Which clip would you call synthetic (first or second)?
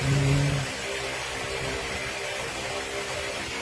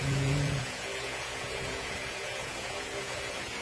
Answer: second